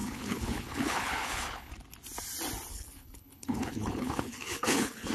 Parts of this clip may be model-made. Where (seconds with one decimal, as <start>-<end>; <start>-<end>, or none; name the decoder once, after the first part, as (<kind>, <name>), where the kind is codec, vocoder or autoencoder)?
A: 0.0-1.7 (codec, HILCodec); 2.7-5.1

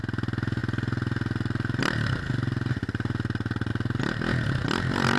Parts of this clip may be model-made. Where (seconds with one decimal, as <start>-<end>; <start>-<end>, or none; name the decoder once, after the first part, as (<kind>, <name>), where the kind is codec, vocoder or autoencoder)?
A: none

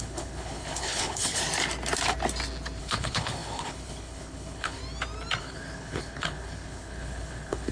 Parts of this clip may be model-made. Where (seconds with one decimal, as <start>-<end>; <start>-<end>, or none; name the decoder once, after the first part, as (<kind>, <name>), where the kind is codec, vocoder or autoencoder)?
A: 0.0-1.4 (codec, HILCodec); 2.8-4.8; 5.4-7.7

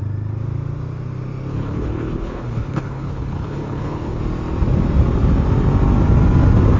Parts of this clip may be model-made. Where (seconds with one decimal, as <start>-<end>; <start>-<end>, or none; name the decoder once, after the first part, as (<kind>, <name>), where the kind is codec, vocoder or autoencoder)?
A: 1.5-4.2 (codec, HILCodec)

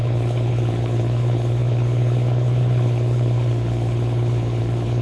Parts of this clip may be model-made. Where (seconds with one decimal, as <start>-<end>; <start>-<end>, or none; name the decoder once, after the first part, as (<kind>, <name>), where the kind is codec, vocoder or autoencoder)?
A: 0.0-5.0 (codec, HILCodec)

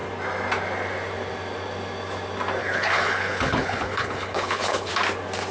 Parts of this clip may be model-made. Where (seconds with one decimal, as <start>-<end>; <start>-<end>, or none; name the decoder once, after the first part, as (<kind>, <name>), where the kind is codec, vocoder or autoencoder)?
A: 2.6-4.9 (codec, HILCodec)

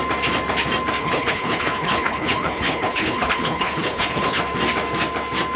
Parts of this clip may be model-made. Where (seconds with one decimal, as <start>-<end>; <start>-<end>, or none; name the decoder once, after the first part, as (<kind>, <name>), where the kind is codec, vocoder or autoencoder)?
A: 1.0-4.4 (codec, HILCodec)